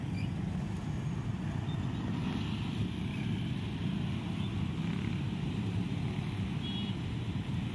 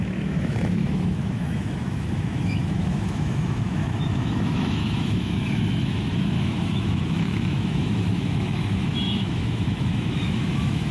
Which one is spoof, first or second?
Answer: second